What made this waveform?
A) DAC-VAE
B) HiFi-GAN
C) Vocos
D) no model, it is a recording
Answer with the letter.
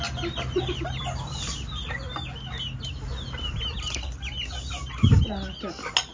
D